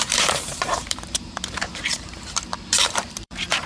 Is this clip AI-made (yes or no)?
yes